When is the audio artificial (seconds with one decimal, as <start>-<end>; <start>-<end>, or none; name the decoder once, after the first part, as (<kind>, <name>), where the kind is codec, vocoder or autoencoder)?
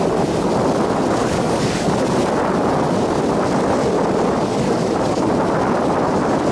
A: 1.2-1.8 (codec, DAC); 4.5-5.3